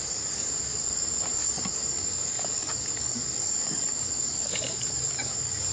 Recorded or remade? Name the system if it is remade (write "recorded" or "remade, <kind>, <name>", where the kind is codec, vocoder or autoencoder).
remade, codec, DAC